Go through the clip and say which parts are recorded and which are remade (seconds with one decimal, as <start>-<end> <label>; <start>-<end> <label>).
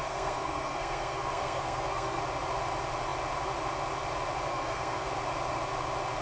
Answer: 0.0-2.2 remade; 2.2-4.5 recorded; 4.5-5.1 remade; 5.1-6.2 recorded